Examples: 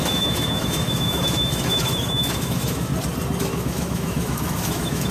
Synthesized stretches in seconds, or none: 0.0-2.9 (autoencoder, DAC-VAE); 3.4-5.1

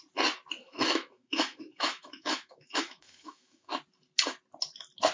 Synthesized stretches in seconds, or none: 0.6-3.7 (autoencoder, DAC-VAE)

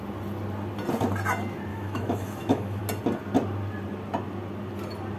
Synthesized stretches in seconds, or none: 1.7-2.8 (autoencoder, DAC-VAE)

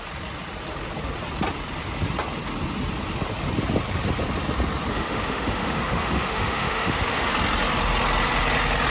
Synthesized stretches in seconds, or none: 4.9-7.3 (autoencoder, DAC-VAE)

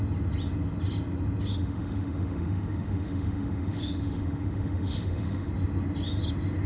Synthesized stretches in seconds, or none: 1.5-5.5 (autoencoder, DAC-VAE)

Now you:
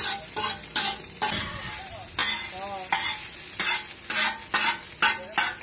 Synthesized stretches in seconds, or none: none